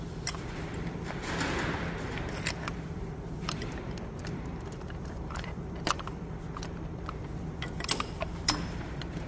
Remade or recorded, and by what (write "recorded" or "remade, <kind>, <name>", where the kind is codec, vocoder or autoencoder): remade, vocoder, BigVGAN v2